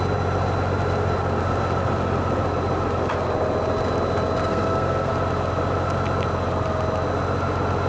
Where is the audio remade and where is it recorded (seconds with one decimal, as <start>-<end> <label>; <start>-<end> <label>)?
0.0-4.5 recorded; 4.5-5.1 remade; 5.1-7.9 recorded